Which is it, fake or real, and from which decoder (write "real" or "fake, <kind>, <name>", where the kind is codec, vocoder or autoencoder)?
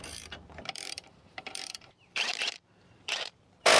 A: fake, vocoder, BigVGAN v2